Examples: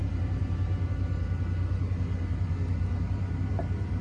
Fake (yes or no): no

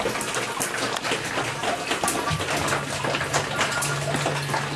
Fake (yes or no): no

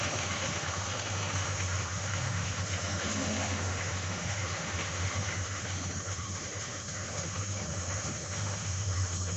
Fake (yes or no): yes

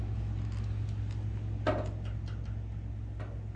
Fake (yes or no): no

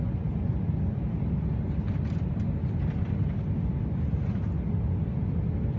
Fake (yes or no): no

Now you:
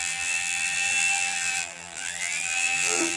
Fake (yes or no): yes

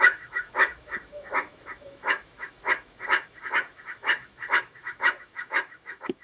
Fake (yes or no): yes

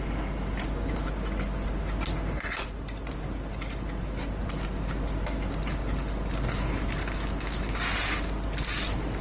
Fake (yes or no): no